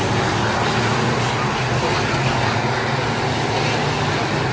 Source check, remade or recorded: recorded